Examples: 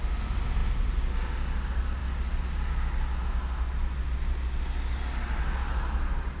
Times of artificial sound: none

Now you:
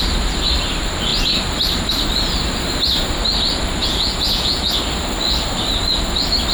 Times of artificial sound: 3.8-4.7